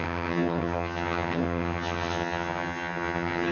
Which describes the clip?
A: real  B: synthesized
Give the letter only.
B